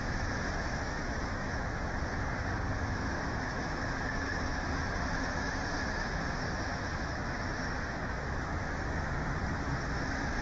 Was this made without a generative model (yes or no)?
no